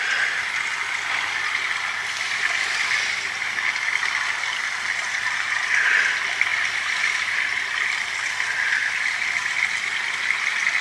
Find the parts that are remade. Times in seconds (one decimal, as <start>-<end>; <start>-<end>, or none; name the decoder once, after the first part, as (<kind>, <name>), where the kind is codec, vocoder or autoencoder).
6.5-9.7 (vocoder, BigVGAN v2)